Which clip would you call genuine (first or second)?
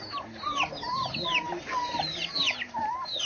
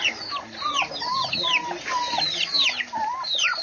first